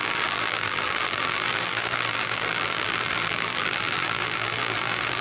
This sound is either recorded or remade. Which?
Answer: remade